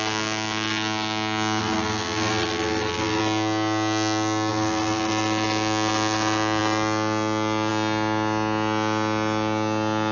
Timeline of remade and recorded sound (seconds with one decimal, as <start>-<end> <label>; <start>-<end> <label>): 0.0-1.6 recorded; 1.6-3.2 remade; 3.2-4.5 recorded; 4.5-5.1 remade; 5.1-10.1 recorded